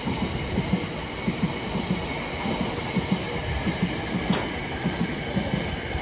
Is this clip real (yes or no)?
yes